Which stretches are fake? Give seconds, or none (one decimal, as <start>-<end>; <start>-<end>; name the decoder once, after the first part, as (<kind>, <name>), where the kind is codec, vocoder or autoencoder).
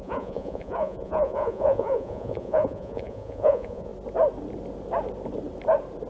0.0-3.9 (vocoder, Vocos)